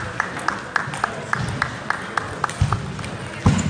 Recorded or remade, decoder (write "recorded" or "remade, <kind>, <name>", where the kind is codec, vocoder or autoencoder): recorded